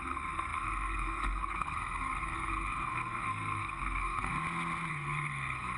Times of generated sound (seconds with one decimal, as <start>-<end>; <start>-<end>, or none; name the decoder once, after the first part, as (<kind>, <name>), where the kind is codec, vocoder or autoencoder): 0.0-4.3 (codec, SNAC); 4.9-5.8